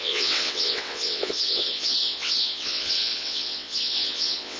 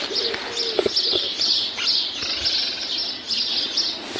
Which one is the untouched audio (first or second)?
second